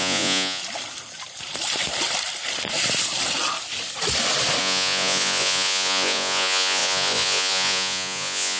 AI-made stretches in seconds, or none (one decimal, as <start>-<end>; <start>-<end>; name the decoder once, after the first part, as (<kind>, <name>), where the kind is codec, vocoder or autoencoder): 0.0-0.6 (vocoder, Vocos); 4.6-8.6